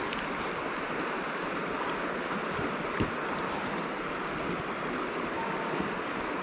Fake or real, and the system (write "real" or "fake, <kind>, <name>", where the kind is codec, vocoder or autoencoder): real